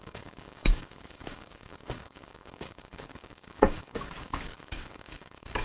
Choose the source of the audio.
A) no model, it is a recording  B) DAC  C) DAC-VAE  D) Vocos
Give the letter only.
B